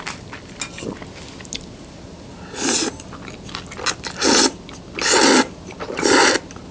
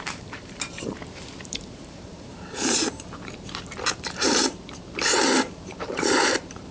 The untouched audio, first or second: first